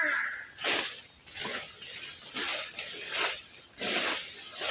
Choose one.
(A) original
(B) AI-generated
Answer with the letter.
A